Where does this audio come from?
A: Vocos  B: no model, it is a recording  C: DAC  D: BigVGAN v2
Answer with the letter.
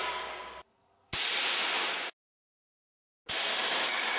B